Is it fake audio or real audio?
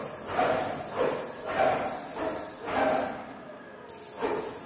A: real